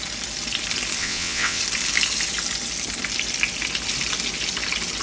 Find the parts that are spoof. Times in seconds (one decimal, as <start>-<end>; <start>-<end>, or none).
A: 1.0-1.6